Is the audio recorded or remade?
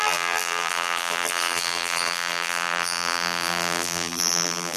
remade